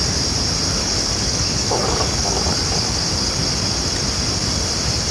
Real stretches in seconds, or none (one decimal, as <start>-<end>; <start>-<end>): 0.0-0.8; 2.4-5.1